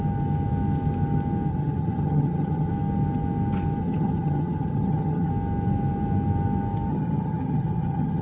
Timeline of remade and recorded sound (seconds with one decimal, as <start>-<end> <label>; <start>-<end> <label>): 0.0-1.5 recorded; 1.5-2.7 remade; 2.7-3.8 recorded; 3.8-5.3 remade; 5.3-6.9 recorded; 6.9-8.2 remade